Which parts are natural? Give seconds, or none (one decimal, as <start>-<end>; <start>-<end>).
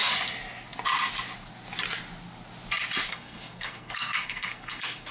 0.0-3.1